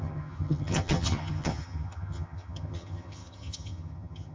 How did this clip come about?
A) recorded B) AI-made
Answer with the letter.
B